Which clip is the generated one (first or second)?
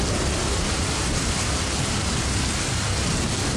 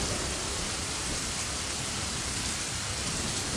second